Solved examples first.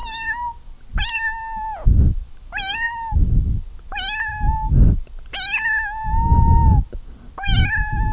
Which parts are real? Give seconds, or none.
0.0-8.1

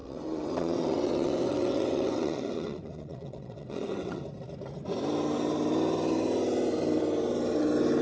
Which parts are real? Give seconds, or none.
4.2-8.0

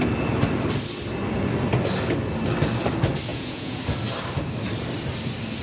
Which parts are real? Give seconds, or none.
0.0-3.3; 3.8-5.6

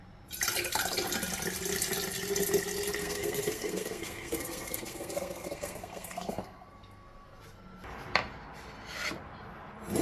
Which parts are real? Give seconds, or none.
0.0-3.0; 7.4-10.0

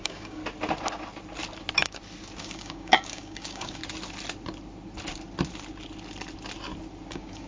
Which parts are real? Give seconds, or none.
0.4-2.4; 3.8-7.1